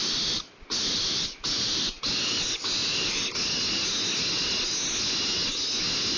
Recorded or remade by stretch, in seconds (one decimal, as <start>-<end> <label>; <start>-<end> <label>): 0.0-3.3 remade; 3.3-6.2 recorded